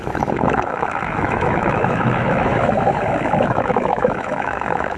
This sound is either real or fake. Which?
fake